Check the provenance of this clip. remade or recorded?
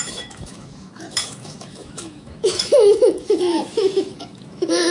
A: remade